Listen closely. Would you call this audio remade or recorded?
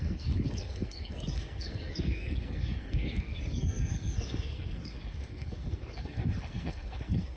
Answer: remade